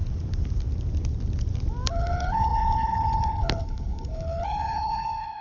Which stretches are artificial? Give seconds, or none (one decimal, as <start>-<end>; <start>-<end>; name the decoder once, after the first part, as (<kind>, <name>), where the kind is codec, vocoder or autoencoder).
1.9-5.4 (codec, HILCodec)